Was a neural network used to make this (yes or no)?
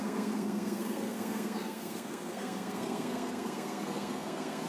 yes